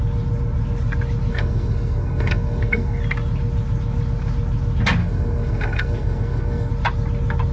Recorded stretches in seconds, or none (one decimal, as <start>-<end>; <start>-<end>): 0.0-1.3; 3.0-5.0; 6.7-7.5